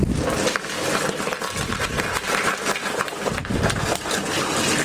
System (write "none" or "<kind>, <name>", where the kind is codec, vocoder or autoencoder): none